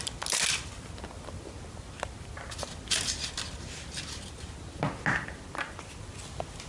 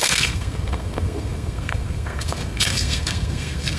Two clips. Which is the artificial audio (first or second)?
second